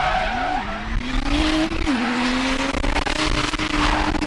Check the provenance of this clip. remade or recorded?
recorded